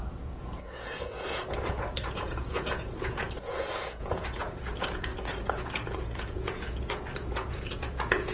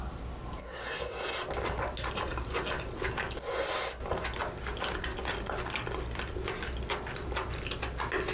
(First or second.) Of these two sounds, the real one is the second